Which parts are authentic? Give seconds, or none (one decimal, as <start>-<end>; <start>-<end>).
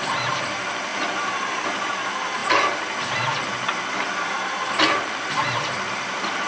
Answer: none